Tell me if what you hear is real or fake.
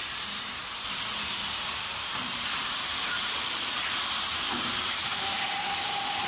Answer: fake